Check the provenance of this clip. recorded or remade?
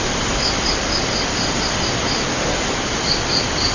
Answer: recorded